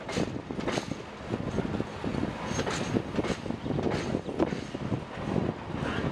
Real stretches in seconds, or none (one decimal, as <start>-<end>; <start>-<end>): 0.0-6.1